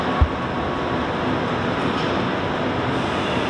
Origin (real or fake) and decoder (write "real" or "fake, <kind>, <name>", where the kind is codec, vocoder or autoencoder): real